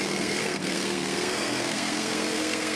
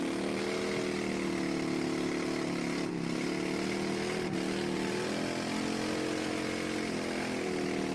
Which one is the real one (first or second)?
second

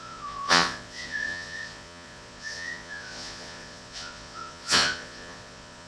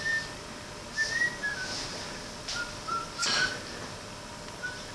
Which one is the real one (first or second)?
second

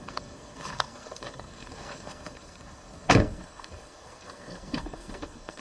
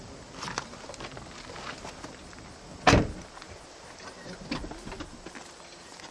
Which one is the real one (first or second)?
second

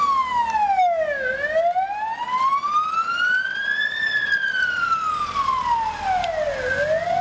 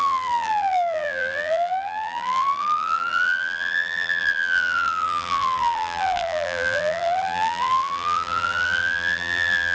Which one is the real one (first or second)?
first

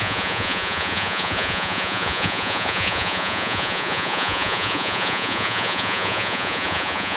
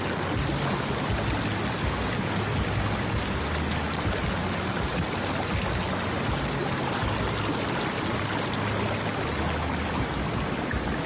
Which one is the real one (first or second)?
second